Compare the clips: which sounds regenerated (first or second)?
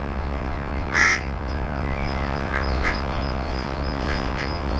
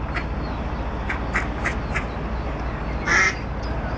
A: first